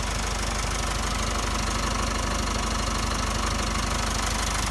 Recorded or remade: recorded